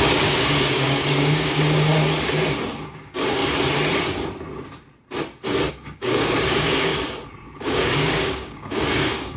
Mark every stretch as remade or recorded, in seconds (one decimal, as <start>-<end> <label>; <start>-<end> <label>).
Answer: 0.0-1.9 remade; 1.9-2.9 recorded; 2.9-3.4 remade; 3.4-5.7 recorded; 5.7-6.9 remade; 6.9-7.6 recorded; 7.6-9.4 remade

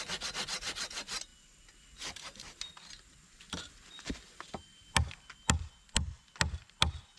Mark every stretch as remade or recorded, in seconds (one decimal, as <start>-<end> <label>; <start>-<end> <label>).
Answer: 0.0-7.2 recorded